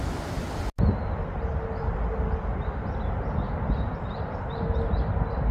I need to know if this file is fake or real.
real